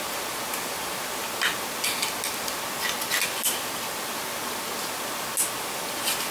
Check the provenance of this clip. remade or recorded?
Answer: recorded